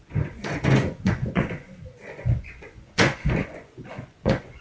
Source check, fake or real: fake